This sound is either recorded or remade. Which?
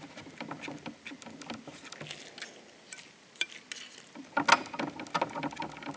recorded